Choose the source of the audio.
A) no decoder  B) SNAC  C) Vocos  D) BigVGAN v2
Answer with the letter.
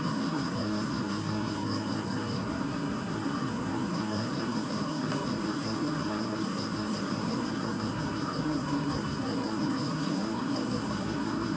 B